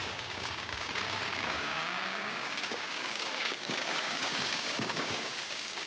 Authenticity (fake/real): fake